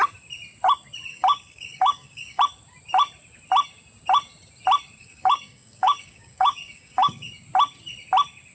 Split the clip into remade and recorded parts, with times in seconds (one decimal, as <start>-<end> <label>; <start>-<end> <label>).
0.0-1.1 recorded; 1.1-2.4 remade; 2.4-5.0 recorded; 5.0-7.3 remade; 7.3-8.5 recorded